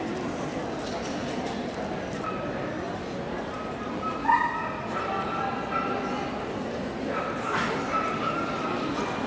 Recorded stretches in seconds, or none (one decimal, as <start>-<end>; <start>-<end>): 0.0-9.3